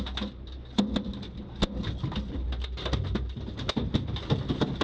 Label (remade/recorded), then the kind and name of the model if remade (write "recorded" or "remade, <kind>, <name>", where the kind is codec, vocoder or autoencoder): recorded